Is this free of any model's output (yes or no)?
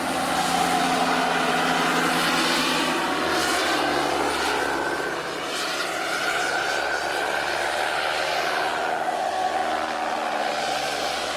yes